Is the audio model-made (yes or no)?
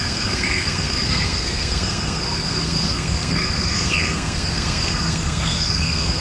yes